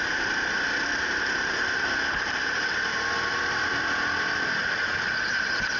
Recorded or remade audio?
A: recorded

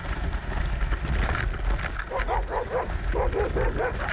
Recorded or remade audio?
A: recorded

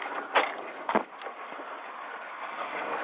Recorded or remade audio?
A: recorded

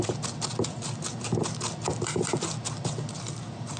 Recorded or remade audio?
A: recorded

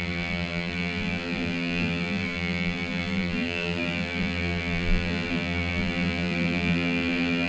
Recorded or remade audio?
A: remade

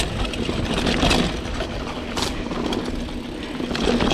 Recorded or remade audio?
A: recorded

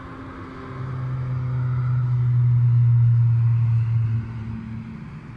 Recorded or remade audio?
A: recorded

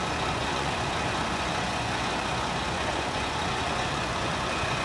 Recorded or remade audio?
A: remade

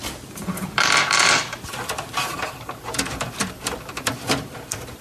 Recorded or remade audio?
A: remade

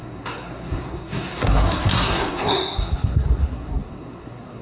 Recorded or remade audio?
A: remade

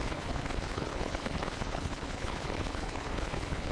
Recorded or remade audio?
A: remade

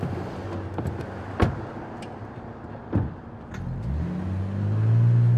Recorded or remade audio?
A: recorded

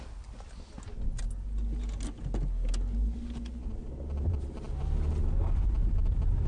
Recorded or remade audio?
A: recorded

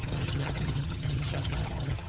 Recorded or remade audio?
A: remade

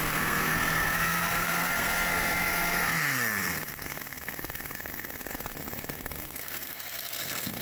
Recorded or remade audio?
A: remade